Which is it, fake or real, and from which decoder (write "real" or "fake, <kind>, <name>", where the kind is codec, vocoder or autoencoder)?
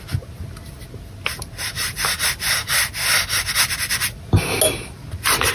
real